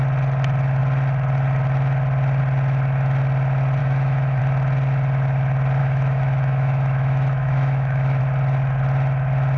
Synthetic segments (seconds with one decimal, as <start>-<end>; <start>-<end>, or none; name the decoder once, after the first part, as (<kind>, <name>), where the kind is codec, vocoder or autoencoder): 3.8-4.4 (autoencoder, DAC-VAE); 5.8-8.2